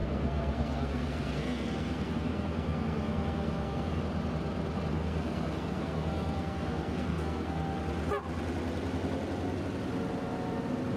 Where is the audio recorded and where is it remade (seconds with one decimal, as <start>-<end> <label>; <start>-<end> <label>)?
0.0-4.0 remade; 4.0-4.9 recorded; 4.9-7.8 remade; 7.8-11.0 recorded